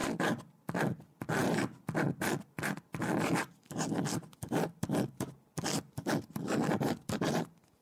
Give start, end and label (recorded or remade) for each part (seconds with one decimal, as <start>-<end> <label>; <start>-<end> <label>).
0.0-7.8 recorded